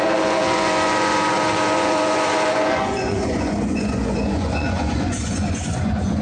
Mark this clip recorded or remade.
remade